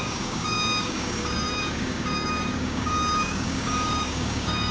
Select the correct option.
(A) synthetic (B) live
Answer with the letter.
A